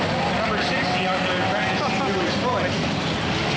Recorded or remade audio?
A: recorded